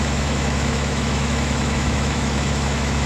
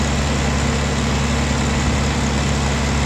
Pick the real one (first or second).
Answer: second